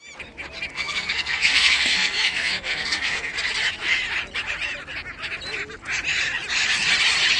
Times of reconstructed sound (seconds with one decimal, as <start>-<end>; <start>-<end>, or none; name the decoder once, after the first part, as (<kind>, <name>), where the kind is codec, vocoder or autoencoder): 0.7-3.3 (codec, SNAC)